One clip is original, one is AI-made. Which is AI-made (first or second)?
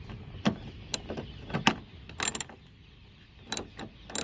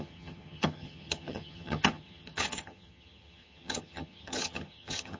second